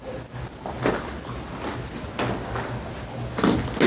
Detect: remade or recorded recorded